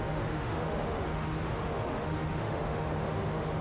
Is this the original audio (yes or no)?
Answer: no